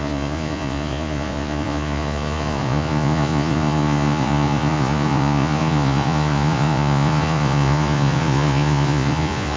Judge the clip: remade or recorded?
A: remade